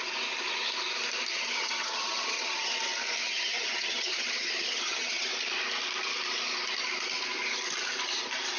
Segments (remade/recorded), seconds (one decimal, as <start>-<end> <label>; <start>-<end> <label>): 0.0-1.3 recorded; 1.3-2.7 remade; 2.7-3.2 recorded; 3.2-5.3 remade; 5.3-8.6 recorded